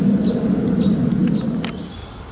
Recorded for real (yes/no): yes